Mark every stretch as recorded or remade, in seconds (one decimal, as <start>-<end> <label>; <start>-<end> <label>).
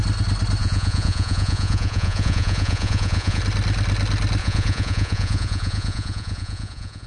0.0-0.6 recorded; 0.6-3.4 remade; 3.4-4.4 recorded; 4.4-7.1 remade